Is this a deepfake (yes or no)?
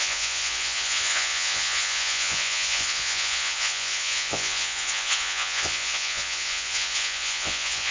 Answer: yes